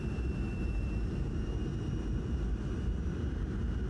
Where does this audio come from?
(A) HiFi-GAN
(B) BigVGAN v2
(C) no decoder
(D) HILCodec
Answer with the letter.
B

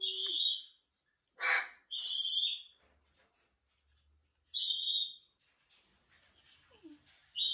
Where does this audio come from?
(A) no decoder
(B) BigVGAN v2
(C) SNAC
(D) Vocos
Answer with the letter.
A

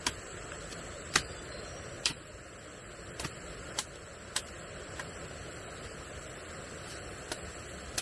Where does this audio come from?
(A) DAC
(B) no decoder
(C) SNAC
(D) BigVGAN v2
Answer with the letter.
B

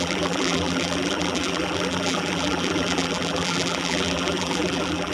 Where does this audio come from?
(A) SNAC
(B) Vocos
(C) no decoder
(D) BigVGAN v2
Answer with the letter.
D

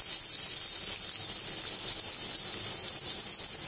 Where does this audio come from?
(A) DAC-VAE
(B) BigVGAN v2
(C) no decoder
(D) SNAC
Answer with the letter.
C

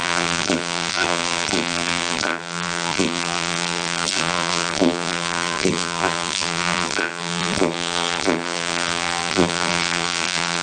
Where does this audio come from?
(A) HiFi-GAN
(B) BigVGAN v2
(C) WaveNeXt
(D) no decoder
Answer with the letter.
B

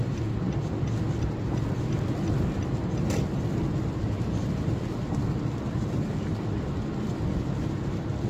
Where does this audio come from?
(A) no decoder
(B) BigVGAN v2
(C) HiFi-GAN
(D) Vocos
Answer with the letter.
A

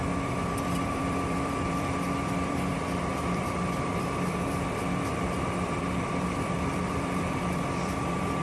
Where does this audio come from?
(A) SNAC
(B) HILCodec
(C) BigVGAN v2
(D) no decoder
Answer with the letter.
C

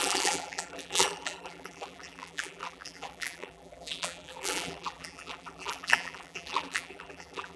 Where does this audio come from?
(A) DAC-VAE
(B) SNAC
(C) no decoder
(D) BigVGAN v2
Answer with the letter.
D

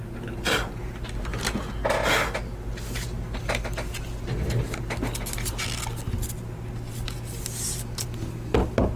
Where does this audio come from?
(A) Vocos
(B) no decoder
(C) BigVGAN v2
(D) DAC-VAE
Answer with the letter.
B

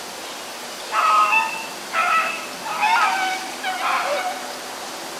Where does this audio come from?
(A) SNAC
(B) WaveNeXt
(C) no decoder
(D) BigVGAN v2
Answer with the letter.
C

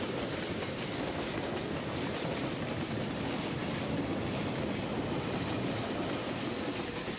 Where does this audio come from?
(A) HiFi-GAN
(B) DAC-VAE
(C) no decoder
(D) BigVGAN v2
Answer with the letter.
C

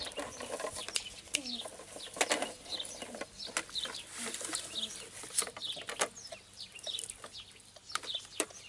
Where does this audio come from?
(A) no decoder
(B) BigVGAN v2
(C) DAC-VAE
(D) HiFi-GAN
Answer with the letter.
A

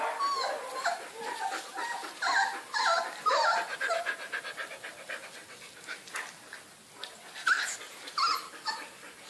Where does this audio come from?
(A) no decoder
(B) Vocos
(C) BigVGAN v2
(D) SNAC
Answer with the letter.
A